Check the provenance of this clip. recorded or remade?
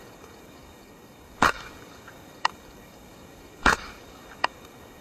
remade